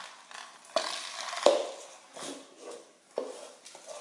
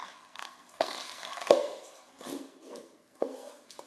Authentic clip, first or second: first